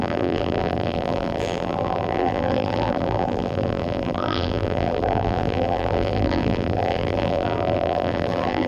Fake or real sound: fake